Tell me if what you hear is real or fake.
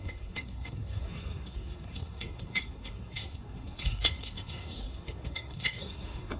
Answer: fake